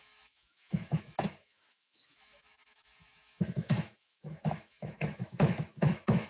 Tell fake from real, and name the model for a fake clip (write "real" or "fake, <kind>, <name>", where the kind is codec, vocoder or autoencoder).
fake, autoencoder, DAC-VAE